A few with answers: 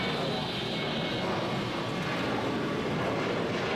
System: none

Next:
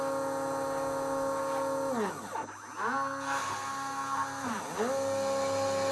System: none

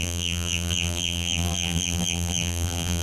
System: vocoder, BigVGAN v2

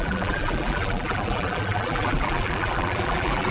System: vocoder, BigVGAN v2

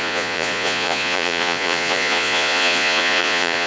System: vocoder, Vocos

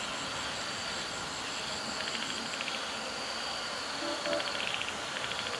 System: none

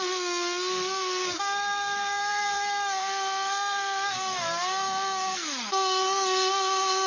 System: codec, SNAC